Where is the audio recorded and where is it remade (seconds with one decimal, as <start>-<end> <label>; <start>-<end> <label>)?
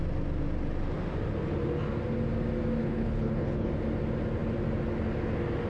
0.0-2.8 recorded; 2.8-3.7 remade; 3.7-5.7 recorded